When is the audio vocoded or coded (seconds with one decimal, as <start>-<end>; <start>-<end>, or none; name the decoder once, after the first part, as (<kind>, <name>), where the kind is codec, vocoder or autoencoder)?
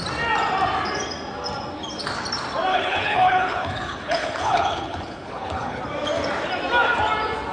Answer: 2.7-5.8 (codec, HILCodec)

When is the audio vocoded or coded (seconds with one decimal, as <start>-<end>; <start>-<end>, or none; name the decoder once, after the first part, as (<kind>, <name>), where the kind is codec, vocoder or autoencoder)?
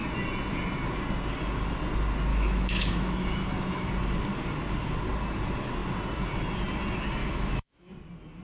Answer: 2.3-3.9 (autoencoder, DAC-VAE); 7.2-7.9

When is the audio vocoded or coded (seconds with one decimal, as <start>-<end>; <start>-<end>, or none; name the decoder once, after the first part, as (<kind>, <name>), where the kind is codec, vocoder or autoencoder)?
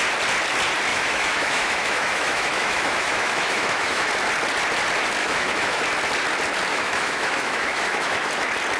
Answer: 0.9-4.1 (autoencoder, DAC-VAE); 5.2-5.8; 6.7-8.3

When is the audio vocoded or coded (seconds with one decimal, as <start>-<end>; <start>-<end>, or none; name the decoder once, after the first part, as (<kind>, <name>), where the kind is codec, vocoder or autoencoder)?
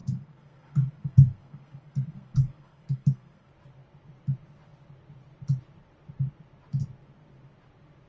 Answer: 0.0-3.5 (codec, SNAC)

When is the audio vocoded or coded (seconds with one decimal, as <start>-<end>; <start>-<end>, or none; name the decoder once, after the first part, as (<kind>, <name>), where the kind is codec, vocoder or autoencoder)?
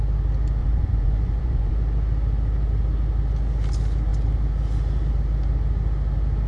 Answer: 0.6-1.7 (vocoder, Vocos)